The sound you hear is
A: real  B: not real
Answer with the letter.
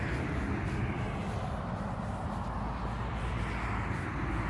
A